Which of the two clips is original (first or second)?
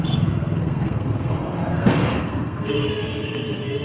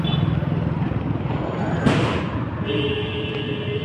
second